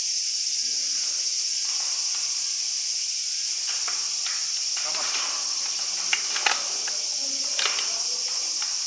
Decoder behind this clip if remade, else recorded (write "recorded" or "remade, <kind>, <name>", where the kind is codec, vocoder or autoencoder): recorded